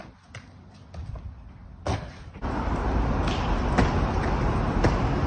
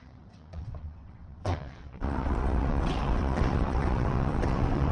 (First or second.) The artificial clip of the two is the second